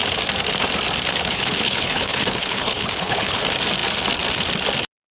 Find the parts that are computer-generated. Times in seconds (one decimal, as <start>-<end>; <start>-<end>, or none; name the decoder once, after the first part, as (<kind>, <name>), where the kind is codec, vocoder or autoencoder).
1.1-3.4 (codec, HILCodec)